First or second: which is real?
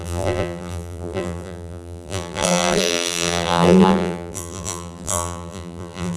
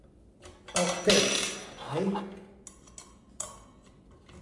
second